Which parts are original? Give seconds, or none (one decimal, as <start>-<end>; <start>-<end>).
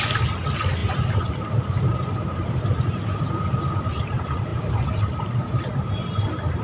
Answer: 0.0-0.8; 3.2-4.5; 5.6-6.6